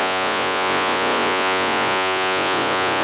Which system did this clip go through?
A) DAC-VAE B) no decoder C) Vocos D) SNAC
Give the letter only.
C